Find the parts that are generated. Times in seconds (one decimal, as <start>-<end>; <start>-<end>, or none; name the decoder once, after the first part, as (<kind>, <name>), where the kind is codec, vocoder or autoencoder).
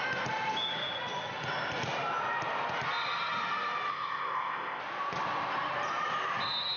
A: 3.9-4.8 (codec, ZipCodec)